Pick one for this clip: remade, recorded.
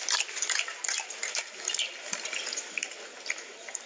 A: recorded